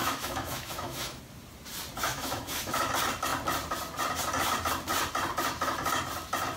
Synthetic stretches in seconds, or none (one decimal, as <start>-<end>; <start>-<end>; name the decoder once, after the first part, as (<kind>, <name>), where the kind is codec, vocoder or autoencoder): 0.0-1.2 (autoencoder, DAC-VAE); 2.1-2.9